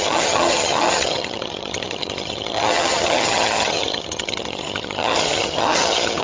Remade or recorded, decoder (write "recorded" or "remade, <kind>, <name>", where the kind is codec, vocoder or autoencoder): remade, vocoder, HiFi-GAN